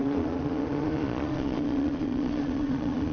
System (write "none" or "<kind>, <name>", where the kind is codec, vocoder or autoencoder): vocoder, Vocos